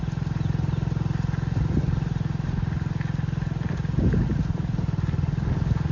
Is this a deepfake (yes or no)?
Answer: no